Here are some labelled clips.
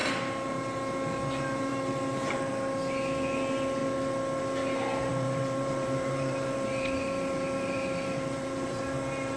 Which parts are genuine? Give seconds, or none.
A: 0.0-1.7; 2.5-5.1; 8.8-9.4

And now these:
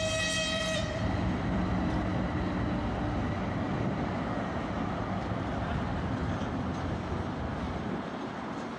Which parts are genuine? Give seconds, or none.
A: 1.6-6.1

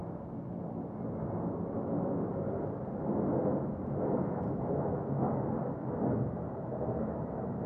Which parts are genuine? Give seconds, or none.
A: 0.0-7.7